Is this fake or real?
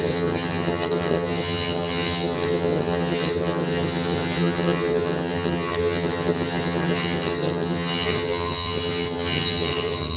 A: fake